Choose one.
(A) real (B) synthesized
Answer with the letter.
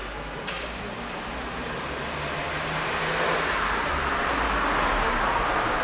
A